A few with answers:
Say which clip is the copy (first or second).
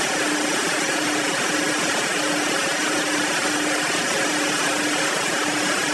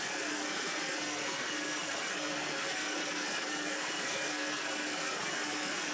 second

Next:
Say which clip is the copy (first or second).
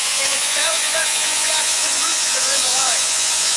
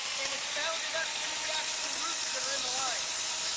first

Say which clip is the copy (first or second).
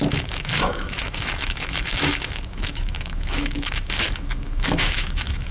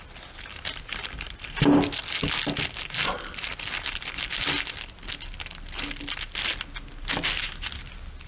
first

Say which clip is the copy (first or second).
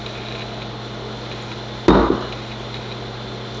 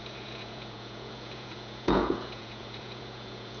second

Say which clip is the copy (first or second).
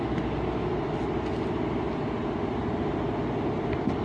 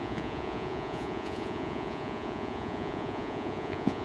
second